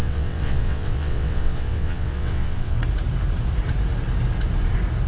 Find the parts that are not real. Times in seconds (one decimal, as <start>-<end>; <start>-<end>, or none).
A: 0.0-2.8